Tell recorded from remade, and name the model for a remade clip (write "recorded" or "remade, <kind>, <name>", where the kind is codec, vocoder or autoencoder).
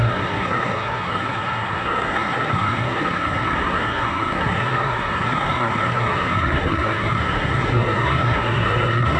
remade, codec, SNAC